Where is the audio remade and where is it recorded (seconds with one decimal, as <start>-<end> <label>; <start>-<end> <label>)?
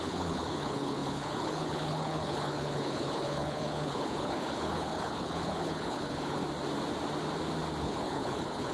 0.0-6.4 remade; 6.4-7.8 recorded; 7.8-8.7 remade